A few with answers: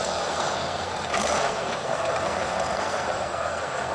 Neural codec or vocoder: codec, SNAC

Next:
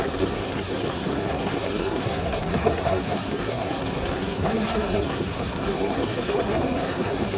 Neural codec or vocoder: codec, SNAC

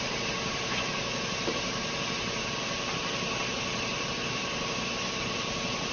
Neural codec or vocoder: none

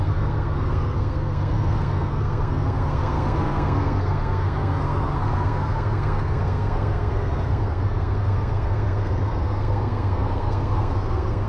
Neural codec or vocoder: codec, SNAC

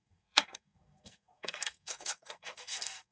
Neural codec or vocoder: codec, SNAC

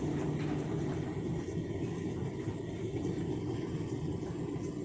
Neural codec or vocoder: none